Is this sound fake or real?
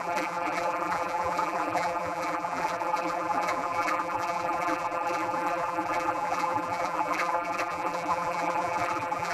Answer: fake